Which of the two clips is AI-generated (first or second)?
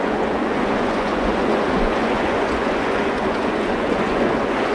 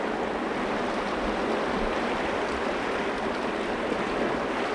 first